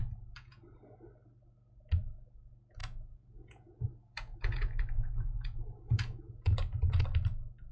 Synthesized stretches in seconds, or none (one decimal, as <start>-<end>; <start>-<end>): 0.0-0.6; 2.8-7.0